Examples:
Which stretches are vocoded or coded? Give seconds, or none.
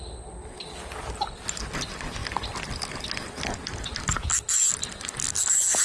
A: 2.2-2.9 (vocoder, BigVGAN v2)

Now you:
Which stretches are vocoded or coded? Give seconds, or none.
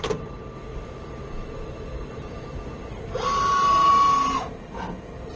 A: 0.7-3.9 (vocoder, BigVGAN v2)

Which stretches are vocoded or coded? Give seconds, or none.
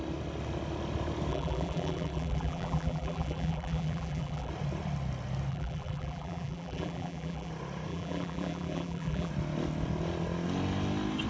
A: 1.3-4.5 (vocoder, BigVGAN v2); 5.5-7.5; 7.9-9.3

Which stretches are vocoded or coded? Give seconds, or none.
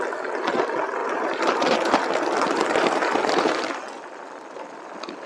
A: 1.0-3.8 (vocoder, BigVGAN v2)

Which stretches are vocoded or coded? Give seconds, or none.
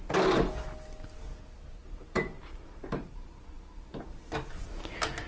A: 1.8-3.4 (vocoder, BigVGAN v2)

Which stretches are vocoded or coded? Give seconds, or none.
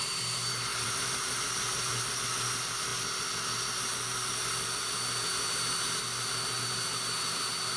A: 0.7-1.4 (vocoder, BigVGAN v2)